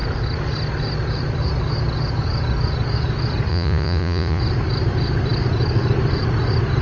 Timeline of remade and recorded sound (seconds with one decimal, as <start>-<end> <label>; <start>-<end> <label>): 0.0-3.5 recorded; 3.5-4.4 remade; 4.4-6.8 recorded